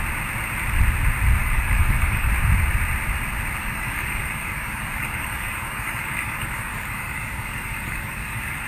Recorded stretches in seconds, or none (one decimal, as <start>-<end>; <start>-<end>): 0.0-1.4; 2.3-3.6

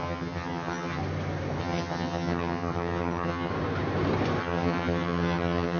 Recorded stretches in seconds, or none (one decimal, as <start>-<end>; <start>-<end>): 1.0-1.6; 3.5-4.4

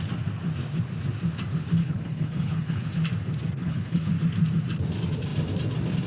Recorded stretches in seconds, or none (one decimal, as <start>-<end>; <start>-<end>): 0.0-1.8; 2.9-3.6; 4.1-6.1

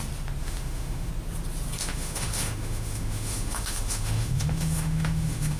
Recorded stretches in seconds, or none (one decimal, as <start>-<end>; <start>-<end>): 0.0-0.4; 1.1-1.8

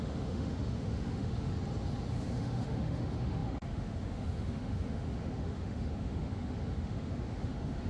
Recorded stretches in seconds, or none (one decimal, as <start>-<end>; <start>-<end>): 1.5-2.1

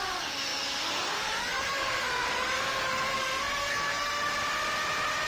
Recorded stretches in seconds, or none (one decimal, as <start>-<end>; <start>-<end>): 4.3-5.3

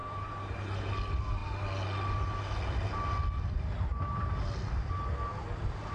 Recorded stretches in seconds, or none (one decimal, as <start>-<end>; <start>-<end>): 0.9-5.9